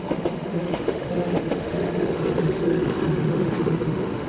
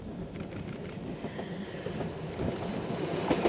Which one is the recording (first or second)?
second